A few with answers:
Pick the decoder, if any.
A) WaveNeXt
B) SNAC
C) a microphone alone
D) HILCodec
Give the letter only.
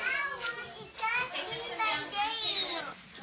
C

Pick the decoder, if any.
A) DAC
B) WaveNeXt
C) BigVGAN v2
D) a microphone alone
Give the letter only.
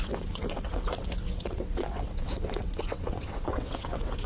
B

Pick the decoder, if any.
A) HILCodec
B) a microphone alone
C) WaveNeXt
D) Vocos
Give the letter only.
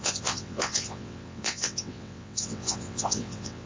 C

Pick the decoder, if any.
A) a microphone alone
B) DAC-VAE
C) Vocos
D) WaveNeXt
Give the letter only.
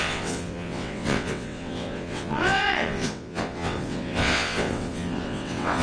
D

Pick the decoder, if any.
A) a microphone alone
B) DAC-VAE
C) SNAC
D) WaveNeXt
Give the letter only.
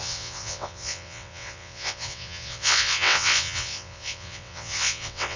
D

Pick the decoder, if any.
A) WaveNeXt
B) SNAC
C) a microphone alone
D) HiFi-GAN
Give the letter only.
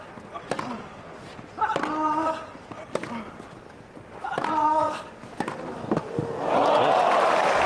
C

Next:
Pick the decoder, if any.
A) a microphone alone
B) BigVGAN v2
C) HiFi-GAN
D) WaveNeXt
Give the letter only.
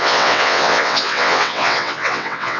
D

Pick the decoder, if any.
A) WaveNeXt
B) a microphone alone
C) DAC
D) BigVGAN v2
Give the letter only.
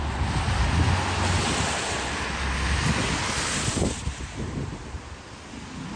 B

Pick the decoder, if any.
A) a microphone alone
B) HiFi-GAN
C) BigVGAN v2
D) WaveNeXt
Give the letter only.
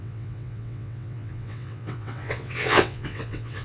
D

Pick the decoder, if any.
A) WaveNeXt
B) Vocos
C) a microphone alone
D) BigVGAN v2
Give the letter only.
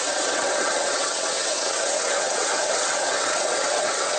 A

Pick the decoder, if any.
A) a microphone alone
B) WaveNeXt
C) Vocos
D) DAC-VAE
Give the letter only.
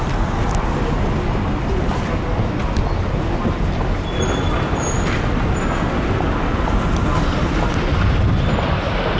A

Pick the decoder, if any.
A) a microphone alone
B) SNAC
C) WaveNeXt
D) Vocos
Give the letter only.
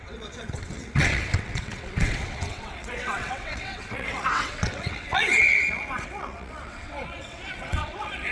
C